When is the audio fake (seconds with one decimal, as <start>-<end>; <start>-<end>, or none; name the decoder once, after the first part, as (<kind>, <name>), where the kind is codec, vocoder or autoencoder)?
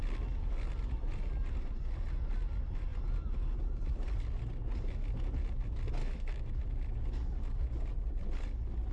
6.0-6.5 (autoencoder, DAC-VAE)